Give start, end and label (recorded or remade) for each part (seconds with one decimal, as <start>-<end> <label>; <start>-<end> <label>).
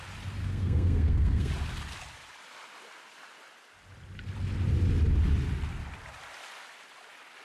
0.0-0.4 recorded; 0.4-1.5 remade; 1.5-7.4 recorded